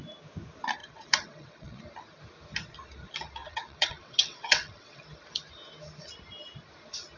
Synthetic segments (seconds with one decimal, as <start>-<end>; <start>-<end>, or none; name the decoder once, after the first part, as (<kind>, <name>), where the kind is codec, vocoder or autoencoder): 0.8-1.8 (vocoder, WaveNeXt); 3.4-5.0